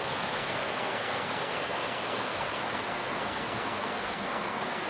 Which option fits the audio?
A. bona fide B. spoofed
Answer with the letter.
B